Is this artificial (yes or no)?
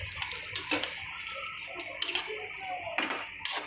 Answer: no